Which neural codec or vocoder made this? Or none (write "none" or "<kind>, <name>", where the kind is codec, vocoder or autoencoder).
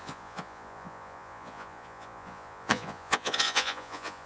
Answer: vocoder, Vocos